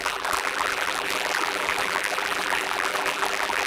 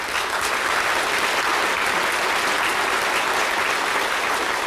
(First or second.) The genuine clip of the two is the second